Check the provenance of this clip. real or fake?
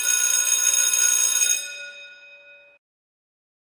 real